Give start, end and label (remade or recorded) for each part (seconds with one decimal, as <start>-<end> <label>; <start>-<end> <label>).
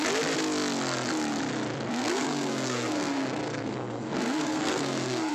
0.0-2.0 recorded; 2.0-5.3 remade